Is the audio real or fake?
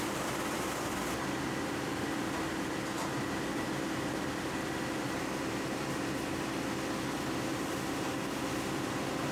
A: real